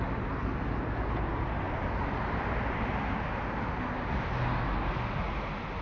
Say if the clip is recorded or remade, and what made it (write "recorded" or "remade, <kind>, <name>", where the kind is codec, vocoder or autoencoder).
recorded